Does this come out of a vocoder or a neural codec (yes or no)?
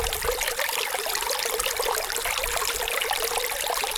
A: no